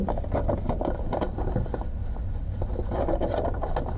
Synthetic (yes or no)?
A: no